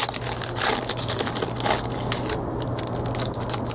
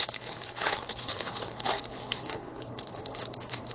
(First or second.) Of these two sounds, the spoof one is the second